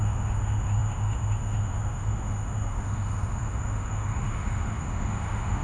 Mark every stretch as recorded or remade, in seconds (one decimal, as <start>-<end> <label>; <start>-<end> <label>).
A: 0.0-5.6 remade